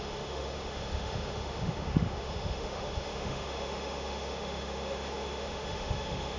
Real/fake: fake